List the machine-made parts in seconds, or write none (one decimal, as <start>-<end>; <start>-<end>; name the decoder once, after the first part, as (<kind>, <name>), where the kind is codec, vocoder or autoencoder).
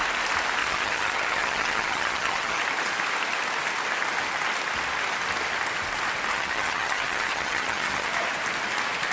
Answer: 0.6-2.6 (vocoder, HiFi-GAN); 6.3-8.1